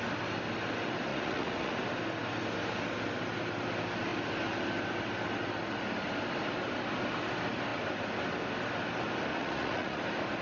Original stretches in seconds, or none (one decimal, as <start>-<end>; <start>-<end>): 0.0-1.1; 1.8-9.3; 10.0-10.4